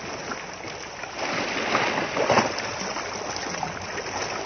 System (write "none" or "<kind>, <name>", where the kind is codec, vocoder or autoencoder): none